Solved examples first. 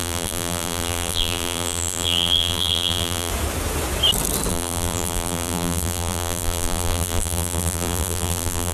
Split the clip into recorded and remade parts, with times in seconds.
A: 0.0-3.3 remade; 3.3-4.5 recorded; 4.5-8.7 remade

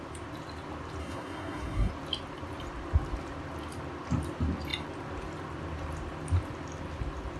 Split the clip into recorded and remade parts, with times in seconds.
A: 0.0-1.0 recorded; 1.0-1.9 remade; 1.9-7.4 recorded

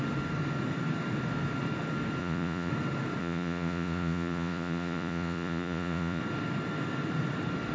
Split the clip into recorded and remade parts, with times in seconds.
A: 0.0-2.2 recorded; 2.2-2.7 remade; 2.7-3.2 recorded; 3.2-6.2 remade; 6.2-7.7 recorded

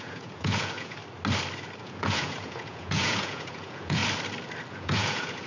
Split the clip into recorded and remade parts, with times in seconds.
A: 0.0-1.0 remade; 1.0-1.8 recorded; 1.8-4.0 remade; 4.0-4.7 recorded; 4.7-5.5 remade

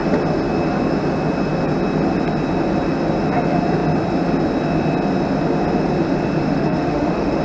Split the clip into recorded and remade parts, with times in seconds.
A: 0.0-6.5 recorded; 6.5-7.4 remade